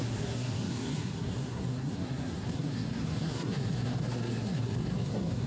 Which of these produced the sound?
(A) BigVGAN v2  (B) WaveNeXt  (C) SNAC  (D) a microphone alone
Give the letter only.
C